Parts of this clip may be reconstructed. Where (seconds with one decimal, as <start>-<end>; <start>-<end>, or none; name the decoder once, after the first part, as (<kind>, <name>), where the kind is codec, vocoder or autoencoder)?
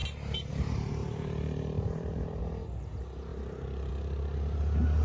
0.0-0.5 (vocoder, BigVGAN v2); 1.0-2.4